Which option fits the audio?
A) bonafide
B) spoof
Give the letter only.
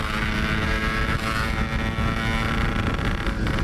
A